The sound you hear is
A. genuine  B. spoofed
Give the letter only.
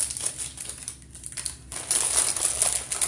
A